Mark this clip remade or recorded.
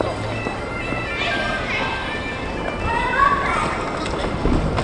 recorded